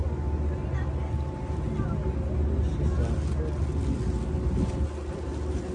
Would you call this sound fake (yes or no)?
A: no